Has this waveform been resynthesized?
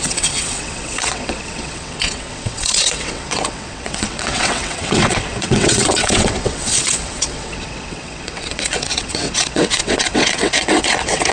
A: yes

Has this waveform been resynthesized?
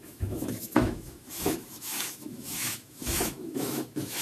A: yes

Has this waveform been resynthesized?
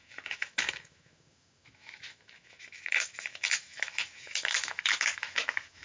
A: yes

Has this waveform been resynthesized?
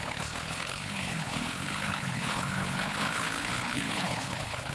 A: yes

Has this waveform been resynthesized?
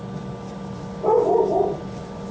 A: no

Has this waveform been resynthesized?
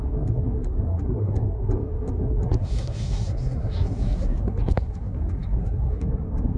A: yes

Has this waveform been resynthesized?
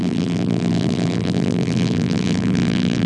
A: yes